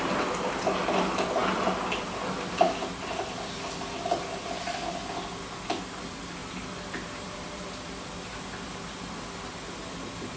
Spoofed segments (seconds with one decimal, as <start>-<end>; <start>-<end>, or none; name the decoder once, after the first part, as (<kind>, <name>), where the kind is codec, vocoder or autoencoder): 6.4-8.4 (vocoder, BigVGAN v2)